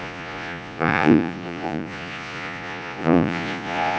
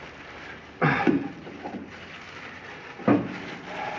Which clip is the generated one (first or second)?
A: first